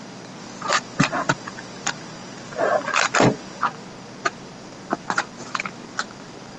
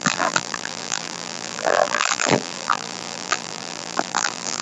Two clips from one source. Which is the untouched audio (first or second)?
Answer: first